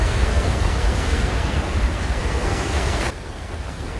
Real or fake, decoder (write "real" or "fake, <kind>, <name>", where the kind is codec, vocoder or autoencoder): fake, codec, SNAC